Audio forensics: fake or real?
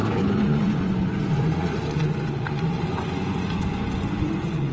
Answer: fake